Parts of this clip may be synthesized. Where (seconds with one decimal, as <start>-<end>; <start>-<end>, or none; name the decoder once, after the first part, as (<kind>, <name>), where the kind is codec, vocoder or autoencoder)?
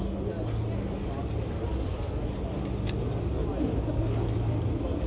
none